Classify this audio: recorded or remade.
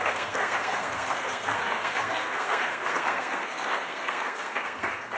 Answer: remade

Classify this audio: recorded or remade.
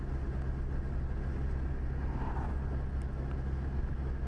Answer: recorded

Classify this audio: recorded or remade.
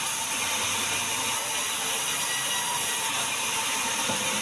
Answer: recorded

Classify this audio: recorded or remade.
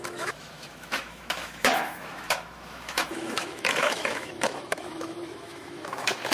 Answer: remade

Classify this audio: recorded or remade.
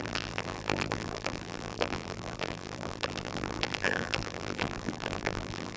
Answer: remade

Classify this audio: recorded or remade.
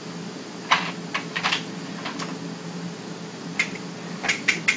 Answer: recorded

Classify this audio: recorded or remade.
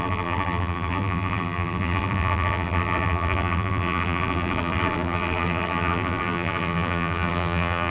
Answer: remade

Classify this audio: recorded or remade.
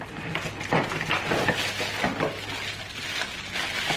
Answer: recorded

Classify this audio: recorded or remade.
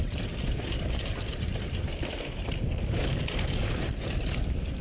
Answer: recorded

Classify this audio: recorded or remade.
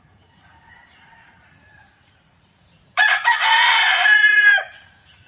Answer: remade